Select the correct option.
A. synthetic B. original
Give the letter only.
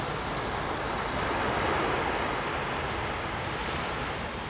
B